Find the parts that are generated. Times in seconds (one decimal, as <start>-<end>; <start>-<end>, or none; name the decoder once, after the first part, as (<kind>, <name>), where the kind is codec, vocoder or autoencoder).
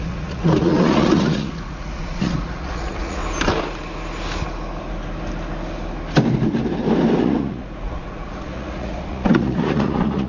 0.0-3.2 (vocoder, Vocos); 7.2-10.3